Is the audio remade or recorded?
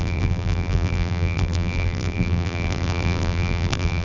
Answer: remade